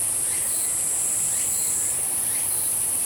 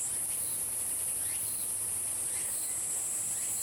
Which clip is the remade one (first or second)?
first